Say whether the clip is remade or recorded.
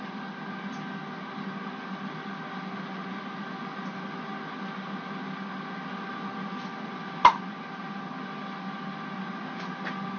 recorded